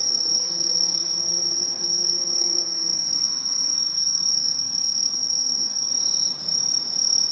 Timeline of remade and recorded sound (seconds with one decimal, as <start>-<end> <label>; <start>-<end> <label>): 0.0-5.9 remade; 5.9-7.3 recorded